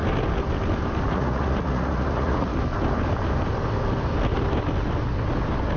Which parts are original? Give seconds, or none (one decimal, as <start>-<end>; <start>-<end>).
0.0-1.1; 2.5-5.8